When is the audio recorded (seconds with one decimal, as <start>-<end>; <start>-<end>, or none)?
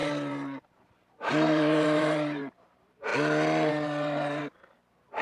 3.1-3.7; 4.4-5.2